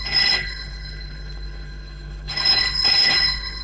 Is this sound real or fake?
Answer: fake